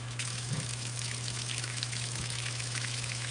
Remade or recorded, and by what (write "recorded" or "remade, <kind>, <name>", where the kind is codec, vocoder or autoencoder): remade, autoencoder, DAC-VAE